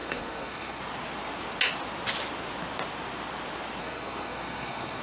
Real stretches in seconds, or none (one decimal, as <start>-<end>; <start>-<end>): 0.8-3.8